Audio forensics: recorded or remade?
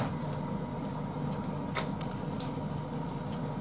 recorded